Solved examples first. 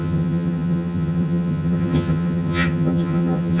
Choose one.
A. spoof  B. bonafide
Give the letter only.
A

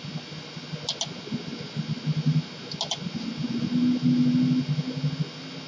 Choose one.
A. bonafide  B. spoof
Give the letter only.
A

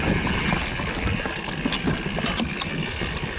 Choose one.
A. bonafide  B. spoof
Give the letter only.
A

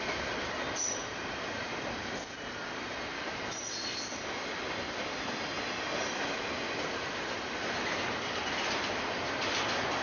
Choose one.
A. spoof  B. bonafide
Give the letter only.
B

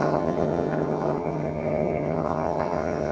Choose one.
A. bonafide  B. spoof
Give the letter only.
B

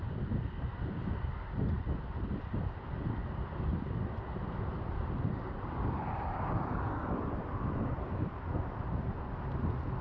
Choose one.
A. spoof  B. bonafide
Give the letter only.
B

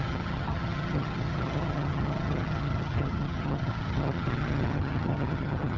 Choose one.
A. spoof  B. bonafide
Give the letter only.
A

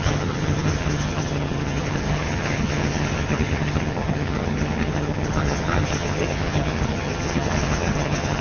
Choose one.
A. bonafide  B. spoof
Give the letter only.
B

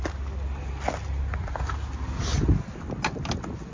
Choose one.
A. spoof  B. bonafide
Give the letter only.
B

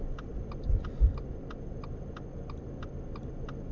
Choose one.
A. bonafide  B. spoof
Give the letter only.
A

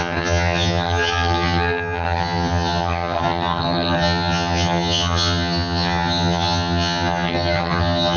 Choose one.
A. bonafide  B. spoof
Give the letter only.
B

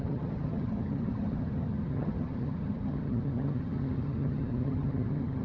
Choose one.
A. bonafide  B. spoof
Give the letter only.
B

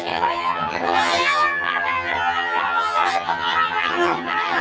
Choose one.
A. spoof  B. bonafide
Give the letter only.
A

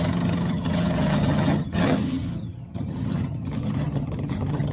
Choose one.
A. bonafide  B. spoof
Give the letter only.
B